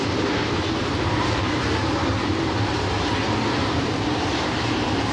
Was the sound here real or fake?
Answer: fake